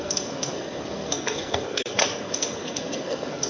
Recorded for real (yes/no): no